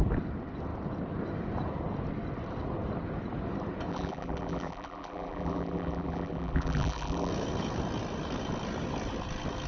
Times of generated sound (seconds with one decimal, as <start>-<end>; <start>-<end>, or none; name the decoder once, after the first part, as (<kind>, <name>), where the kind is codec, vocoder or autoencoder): 3.9-7.3 (vocoder, BigVGAN v2)